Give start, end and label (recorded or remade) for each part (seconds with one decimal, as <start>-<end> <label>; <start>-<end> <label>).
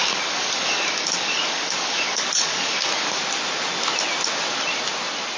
0.0-3.2 remade; 3.2-5.4 recorded